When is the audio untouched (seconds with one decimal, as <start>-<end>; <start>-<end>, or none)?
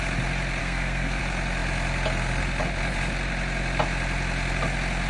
0.0-0.6; 1.2-5.1